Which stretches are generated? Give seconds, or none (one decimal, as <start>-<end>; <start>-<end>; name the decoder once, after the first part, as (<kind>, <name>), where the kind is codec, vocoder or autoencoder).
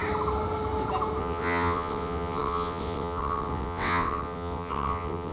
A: 1.2-5.3 (vocoder, WaveNeXt)